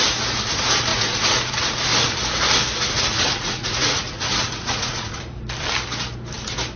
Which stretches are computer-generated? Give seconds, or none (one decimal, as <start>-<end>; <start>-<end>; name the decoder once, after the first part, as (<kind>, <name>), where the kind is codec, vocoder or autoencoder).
0.9-1.5 (vocoder, Vocos); 3.1-5.2

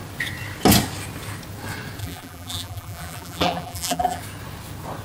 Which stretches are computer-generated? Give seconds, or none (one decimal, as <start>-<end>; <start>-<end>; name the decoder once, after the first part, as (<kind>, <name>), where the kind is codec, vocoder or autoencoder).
2.0-4.2 (vocoder, BigVGAN v2)

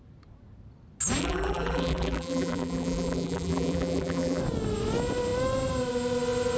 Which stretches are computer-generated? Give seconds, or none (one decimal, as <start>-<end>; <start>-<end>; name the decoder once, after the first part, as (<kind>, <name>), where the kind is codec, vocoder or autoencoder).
1.2-4.4 (vocoder, BigVGAN v2)

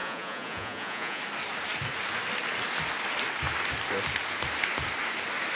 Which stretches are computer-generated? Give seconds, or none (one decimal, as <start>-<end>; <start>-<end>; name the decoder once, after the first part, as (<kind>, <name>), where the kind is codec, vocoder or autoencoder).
0.0-1.2 (vocoder, Vocos)

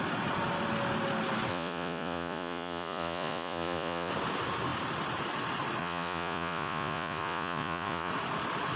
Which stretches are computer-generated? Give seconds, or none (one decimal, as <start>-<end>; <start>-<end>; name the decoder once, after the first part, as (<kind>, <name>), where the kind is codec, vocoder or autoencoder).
1.5-4.1 (vocoder, Vocos); 5.8-8.1

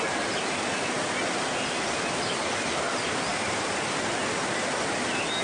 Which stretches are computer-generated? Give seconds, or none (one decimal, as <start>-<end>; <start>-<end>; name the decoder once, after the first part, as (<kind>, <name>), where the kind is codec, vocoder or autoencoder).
none